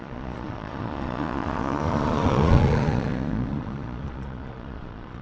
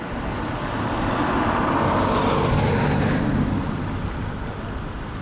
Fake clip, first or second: first